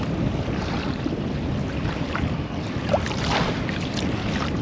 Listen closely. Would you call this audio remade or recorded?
recorded